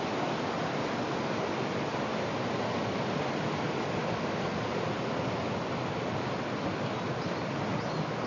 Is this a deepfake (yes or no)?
no